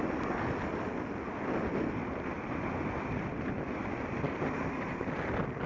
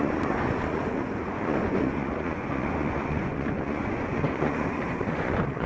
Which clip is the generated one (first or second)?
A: second